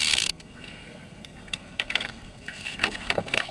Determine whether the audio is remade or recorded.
remade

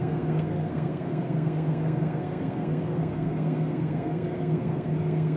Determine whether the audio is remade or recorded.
remade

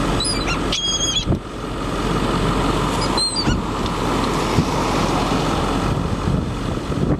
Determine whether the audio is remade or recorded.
recorded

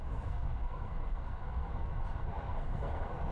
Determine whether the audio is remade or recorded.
remade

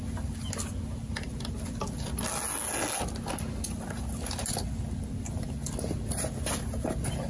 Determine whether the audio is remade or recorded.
recorded